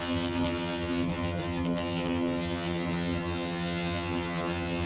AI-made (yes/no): yes